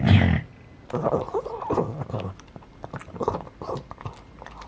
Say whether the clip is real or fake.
real